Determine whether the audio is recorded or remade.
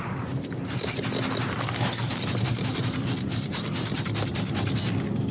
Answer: recorded